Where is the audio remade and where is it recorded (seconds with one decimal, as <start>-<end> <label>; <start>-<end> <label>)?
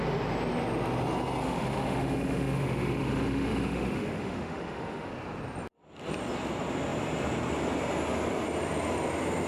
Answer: 0.0-1.4 recorded; 1.4-5.1 remade; 5.1-9.5 recorded